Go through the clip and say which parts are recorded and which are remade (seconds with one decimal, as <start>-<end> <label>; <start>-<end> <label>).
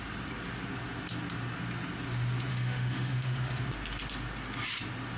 0.0-2.5 recorded; 2.5-3.6 remade; 3.6-5.2 recorded